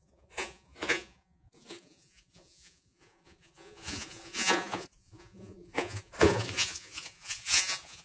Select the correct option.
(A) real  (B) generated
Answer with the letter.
B